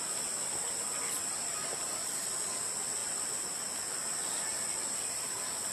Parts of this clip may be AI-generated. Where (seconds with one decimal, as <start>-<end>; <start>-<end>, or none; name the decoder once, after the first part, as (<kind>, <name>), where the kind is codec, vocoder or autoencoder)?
none